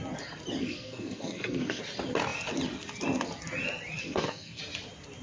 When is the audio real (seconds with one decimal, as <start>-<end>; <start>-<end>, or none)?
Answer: 0.0-0.6; 1.8-4.0; 4.6-5.2